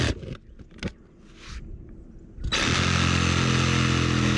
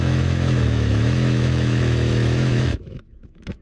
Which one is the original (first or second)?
first